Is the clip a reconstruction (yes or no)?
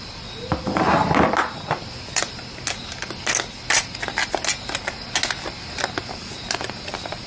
no